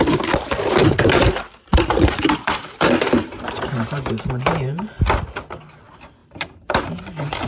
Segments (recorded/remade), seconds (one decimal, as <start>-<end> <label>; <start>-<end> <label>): 0.0-0.8 recorded; 0.8-5.0 remade; 5.0-6.2 recorded; 6.2-7.0 remade; 7.0-7.5 recorded